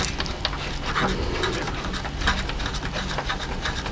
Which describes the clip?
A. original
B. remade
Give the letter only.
A